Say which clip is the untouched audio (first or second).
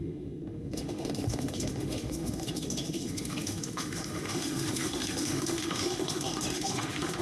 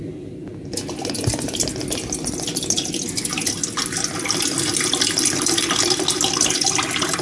second